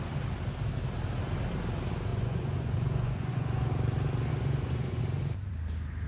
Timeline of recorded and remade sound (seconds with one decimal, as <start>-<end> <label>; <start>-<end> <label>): 0.0-2.1 recorded; 2.1-3.7 remade; 3.7-4.3 recorded; 4.3-5.0 remade; 5.0-6.1 recorded